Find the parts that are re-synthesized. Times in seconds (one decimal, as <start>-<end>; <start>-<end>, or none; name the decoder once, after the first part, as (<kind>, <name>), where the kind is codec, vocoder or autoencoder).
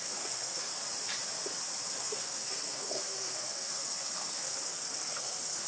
0.0-0.8 (codec, SNAC); 1.9-5.7